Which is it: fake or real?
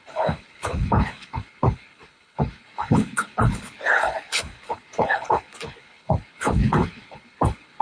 fake